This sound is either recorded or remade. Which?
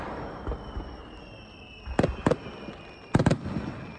recorded